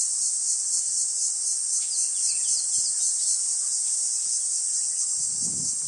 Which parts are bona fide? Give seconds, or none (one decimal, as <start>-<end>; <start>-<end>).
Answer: 0.0-3.7; 4.5-5.9